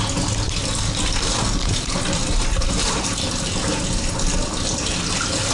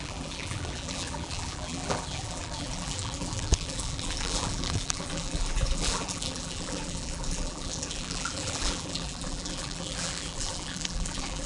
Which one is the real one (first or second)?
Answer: first